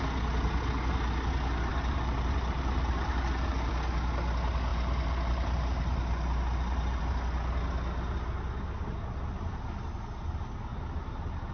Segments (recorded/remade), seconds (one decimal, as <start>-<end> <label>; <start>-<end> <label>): 0.0-1.7 recorded; 1.7-3.7 remade; 3.7-4.7 recorded; 4.7-7.0 remade; 7.0-10.7 recorded; 10.7-11.5 remade